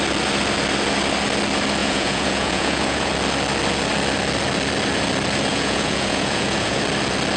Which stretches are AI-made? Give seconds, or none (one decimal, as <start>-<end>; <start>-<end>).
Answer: 1.8-3.1; 5.5-6.8